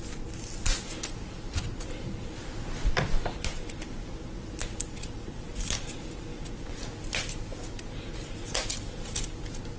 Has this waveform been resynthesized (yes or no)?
no